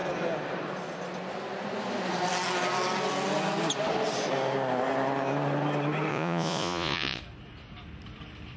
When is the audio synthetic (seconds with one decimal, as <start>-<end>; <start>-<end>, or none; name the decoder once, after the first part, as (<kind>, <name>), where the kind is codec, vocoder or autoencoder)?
6.1-7.2 (vocoder, Vocos)